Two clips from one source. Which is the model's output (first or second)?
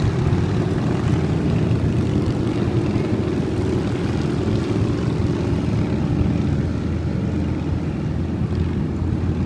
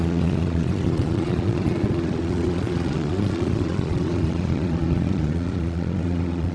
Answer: second